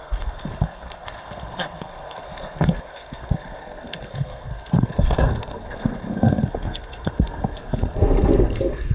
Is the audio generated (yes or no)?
yes